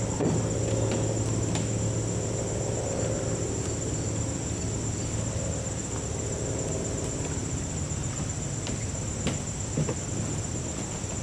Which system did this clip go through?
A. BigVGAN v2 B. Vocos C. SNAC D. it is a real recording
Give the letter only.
D